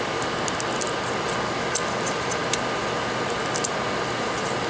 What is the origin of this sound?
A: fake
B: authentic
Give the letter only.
B